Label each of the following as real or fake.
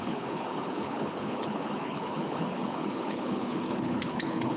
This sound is fake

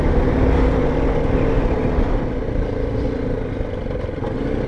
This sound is real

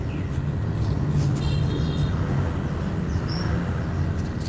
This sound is real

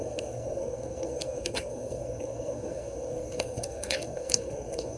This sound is fake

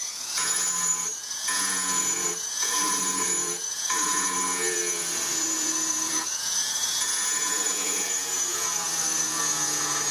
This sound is fake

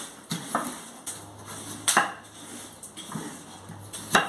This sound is fake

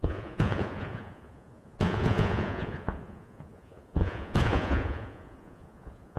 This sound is fake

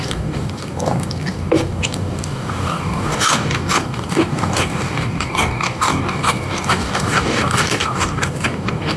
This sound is fake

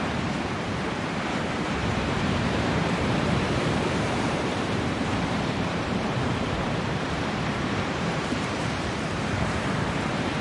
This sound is fake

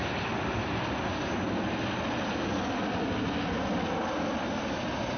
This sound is real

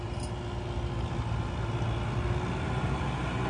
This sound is real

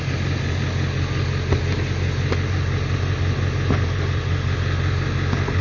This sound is real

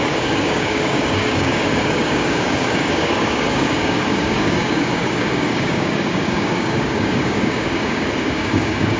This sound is fake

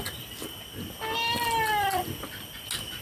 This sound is real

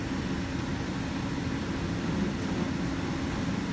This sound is real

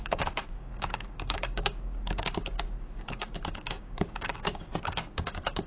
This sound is fake